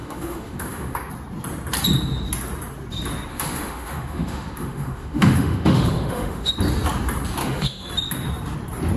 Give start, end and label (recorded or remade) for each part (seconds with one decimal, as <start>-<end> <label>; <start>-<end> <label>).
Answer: 0.0-1.1 remade; 1.1-3.3 recorded; 3.3-6.5 remade; 6.5-7.4 recorded; 7.4-7.9 remade; 7.9-9.0 recorded